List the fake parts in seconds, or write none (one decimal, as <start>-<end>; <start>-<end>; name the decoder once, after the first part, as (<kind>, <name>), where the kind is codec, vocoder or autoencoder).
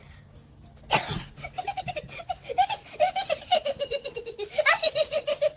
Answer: 3.5-4.7 (autoencoder, DAC-VAE)